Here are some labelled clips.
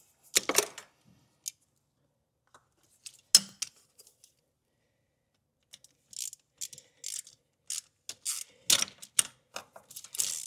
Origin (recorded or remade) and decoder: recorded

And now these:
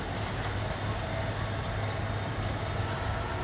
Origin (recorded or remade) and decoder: recorded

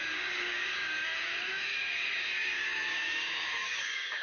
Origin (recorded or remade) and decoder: remade, codec, DAC